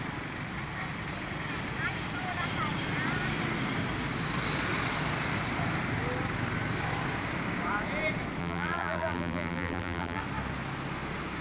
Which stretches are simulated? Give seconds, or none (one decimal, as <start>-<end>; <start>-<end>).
8.4-10.2